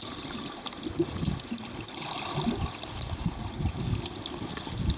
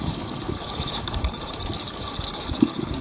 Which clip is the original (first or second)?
first